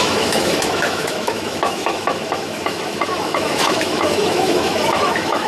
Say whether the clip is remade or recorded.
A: remade